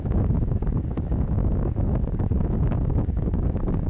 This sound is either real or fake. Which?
fake